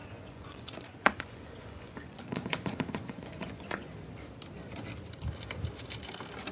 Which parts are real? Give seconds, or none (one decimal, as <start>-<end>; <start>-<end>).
3.9-6.5